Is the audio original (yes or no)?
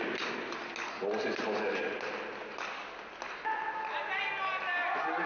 yes